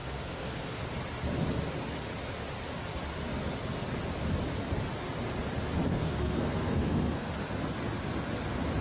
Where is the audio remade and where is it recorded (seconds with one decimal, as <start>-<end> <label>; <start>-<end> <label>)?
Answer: 0.0-0.8 remade; 0.8-5.9 recorded; 5.9-7.3 remade; 7.3-8.8 recorded